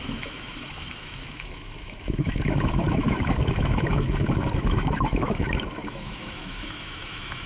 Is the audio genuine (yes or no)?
no